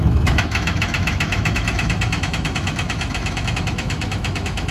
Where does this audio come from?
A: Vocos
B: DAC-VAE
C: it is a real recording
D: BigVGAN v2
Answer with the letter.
B